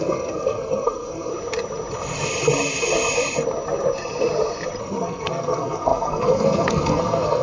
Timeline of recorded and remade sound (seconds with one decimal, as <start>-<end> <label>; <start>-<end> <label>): 0.0-1.3 remade; 1.3-4.8 recorded; 4.8-7.4 remade